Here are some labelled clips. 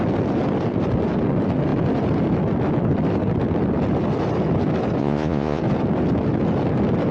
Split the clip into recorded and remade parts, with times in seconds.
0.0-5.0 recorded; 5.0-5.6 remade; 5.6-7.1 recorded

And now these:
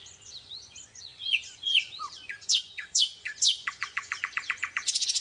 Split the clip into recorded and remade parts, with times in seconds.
0.0-5.2 remade

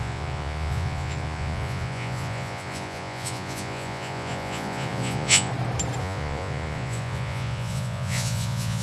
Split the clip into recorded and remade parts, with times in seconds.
0.0-5.5 remade; 5.5-6.0 recorded; 6.0-8.8 remade

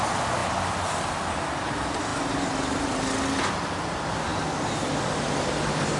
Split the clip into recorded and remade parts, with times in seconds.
0.0-6.0 recorded